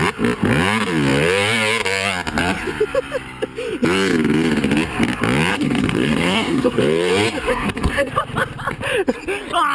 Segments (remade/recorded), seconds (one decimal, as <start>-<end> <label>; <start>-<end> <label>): 0.0-5.5 recorded; 5.5-6.8 remade; 6.8-7.5 recorded; 7.5-8.1 remade; 8.1-9.7 recorded